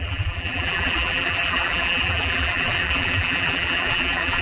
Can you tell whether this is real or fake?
fake